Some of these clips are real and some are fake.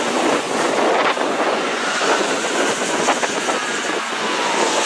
fake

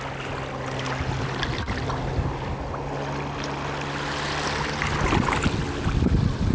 real